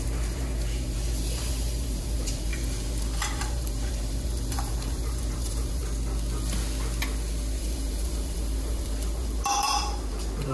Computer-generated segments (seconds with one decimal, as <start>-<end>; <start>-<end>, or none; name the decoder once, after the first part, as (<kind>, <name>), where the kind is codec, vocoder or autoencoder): 0.0-5.8 (vocoder, BigVGAN v2); 7.6-10.5